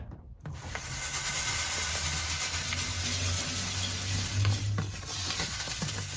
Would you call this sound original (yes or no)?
yes